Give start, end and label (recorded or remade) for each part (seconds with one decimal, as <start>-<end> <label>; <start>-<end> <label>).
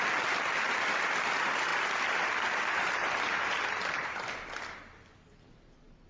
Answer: 0.0-6.1 remade